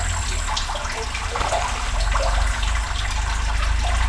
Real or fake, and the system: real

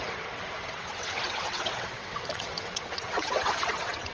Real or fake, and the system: fake, vocoder, WaveNeXt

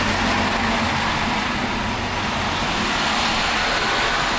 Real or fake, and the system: real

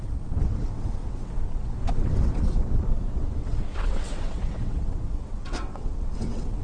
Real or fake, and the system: fake, vocoder, WaveNeXt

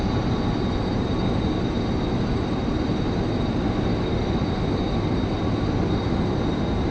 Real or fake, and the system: real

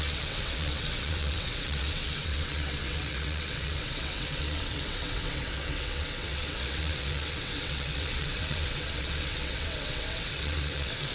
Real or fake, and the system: fake, vocoder, WaveNeXt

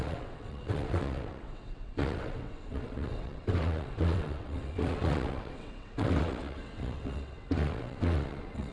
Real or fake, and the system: fake, vocoder, WaveNeXt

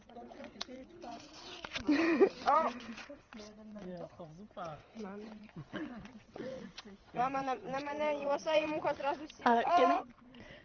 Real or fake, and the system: fake, vocoder, WaveNeXt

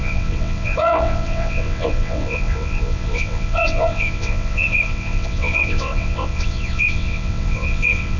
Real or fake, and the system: fake, vocoder, WaveNeXt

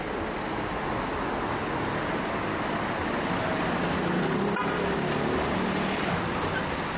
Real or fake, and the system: real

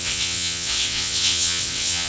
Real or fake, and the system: fake, vocoder, WaveNeXt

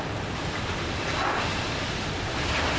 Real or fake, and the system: real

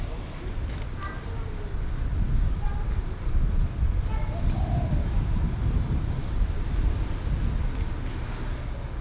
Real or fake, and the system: real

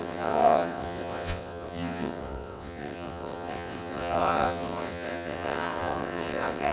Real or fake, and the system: fake, vocoder, WaveNeXt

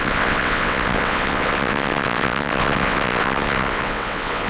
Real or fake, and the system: fake, vocoder, WaveNeXt